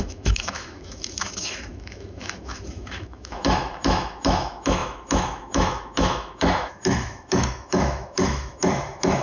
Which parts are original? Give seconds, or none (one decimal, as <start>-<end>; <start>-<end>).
none